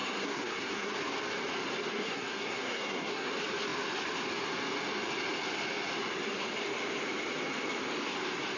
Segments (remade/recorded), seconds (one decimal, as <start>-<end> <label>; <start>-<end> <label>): 0.0-0.9 remade; 0.9-1.9 recorded; 1.9-3.3 remade; 3.3-8.6 recorded